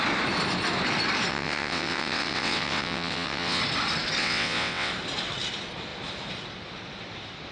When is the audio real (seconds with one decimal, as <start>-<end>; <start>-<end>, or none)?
0.0-1.3; 3.6-4.2; 4.9-7.5